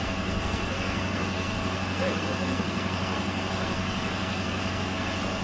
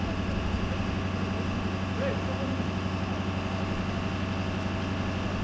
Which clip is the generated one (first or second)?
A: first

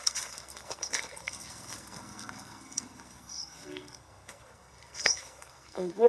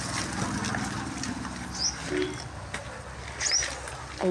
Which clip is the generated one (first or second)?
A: first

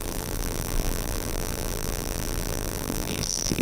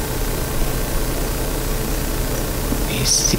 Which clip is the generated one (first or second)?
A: first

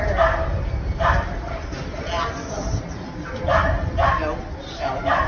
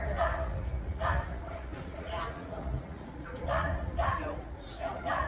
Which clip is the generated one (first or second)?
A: second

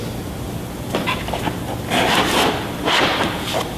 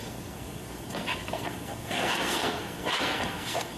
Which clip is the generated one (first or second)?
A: second